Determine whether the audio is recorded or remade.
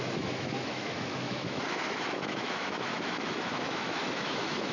remade